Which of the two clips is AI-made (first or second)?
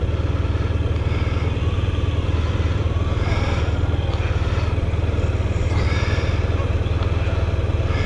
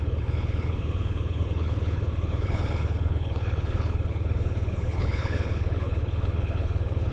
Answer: second